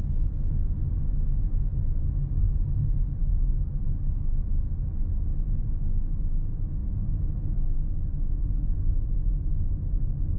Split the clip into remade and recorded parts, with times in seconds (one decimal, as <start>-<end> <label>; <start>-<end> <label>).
0.0-10.4 recorded

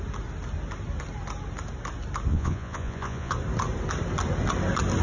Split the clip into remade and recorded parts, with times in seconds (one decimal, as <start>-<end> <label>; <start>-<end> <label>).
0.0-2.3 recorded; 2.3-3.3 remade; 3.3-5.0 recorded

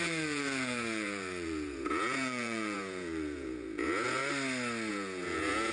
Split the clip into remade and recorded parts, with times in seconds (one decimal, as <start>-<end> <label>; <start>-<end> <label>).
0.0-4.2 remade; 4.2-4.9 recorded; 4.9-5.7 remade

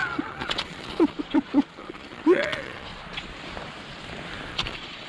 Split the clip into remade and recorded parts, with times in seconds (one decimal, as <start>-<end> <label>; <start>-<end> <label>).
0.0-2.9 remade; 2.9-4.5 recorded; 4.5-5.1 remade

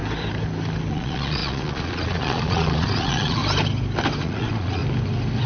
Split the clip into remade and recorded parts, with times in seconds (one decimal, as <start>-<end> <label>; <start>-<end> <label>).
0.0-0.9 recorded; 0.9-3.4 remade; 3.4-4.2 recorded; 4.2-4.8 remade; 4.8-5.5 recorded